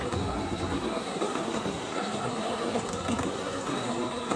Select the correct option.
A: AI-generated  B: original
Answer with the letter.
A